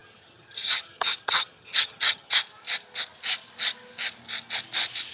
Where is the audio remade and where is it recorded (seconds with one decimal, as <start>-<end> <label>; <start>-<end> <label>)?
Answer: 0.0-2.3 remade; 2.3-5.1 recorded